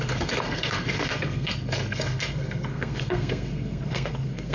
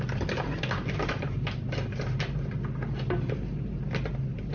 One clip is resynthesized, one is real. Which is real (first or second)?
second